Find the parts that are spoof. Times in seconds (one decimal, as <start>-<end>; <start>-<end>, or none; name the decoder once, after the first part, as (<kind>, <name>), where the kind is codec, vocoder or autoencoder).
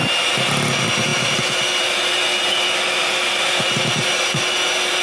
none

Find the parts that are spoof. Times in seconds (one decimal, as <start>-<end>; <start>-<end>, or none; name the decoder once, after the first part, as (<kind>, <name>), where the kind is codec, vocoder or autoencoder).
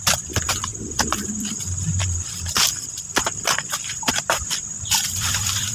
0.0-5.7 (vocoder, BigVGAN v2)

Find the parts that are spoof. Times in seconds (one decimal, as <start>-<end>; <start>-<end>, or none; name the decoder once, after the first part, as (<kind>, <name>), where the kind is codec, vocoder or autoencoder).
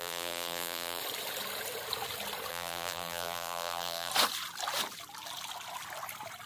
0.0-1.0 (vocoder, BigVGAN v2); 2.5-4.1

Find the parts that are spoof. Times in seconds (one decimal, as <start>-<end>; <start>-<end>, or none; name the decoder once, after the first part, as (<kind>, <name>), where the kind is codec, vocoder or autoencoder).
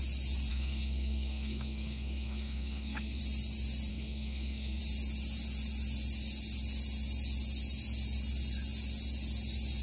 0.5-3.2 (codec, SNAC); 3.9-4.8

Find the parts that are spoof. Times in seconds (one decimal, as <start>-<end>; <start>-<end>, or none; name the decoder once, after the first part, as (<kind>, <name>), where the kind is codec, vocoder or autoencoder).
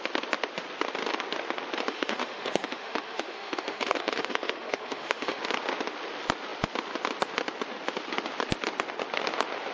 1.9-5.4 (autoencoder, DAC-VAE)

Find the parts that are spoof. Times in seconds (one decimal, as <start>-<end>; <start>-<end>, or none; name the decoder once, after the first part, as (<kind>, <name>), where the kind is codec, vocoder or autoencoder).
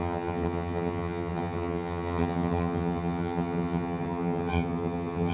0.0-5.3 (vocoder, HiFi-GAN)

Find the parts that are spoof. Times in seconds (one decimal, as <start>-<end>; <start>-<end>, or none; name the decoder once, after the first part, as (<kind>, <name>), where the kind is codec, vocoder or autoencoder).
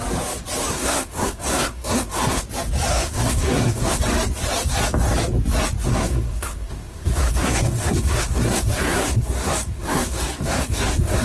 0.7-2.4 (codec, SNAC); 2.9-4.0; 5.9-11.2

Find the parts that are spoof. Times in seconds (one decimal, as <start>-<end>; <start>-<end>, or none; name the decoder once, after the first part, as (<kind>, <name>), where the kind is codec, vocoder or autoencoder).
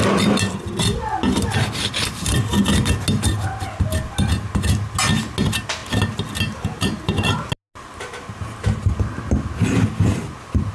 none